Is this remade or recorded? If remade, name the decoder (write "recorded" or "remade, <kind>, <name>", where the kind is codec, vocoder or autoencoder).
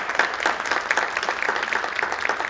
recorded